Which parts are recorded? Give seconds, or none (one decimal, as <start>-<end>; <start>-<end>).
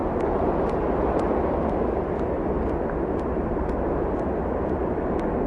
0.0-5.5